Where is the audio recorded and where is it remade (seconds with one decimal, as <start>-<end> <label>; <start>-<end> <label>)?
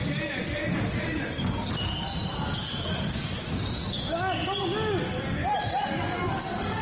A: 0.0-0.6 recorded; 0.6-3.9 remade; 3.9-5.4 recorded; 5.4-5.9 remade; 5.9-6.8 recorded